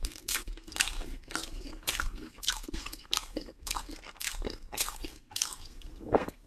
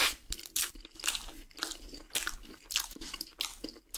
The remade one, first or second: first